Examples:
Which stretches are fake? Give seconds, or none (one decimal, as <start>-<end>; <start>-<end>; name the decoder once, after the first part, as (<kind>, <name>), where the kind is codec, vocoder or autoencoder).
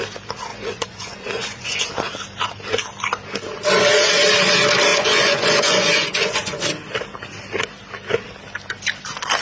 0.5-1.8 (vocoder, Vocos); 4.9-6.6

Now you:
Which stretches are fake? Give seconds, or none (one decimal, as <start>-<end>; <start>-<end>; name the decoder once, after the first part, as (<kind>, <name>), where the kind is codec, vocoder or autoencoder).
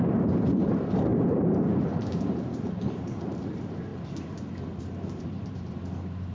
0.0-6.3 (vocoder, BigVGAN v2)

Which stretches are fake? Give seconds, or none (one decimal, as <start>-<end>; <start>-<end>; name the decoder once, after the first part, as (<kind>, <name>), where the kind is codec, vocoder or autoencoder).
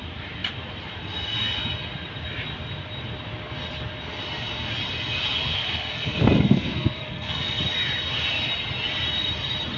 5.4-7.6 (codec, SNAC)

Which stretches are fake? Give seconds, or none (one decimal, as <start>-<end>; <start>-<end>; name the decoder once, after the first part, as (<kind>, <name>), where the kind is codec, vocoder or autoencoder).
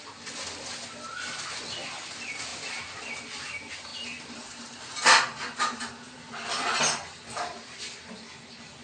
none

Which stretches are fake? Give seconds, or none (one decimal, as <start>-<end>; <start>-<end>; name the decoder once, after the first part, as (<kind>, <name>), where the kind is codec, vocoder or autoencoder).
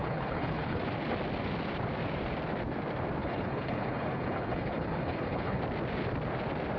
0.0-0.8 (codec, HILCodec); 3.2-5.6